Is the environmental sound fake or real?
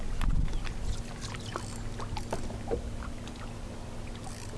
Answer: real